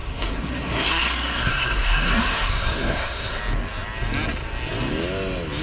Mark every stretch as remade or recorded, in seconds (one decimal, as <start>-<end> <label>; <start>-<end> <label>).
0.0-3.4 remade; 3.4-5.6 recorded